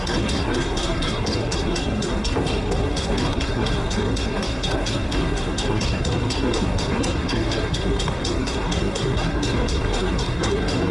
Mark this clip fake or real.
fake